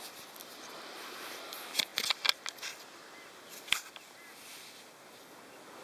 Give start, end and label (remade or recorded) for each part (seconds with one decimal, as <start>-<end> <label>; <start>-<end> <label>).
0.0-5.8 recorded